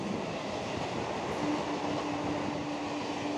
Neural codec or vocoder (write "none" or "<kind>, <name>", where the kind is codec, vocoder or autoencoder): none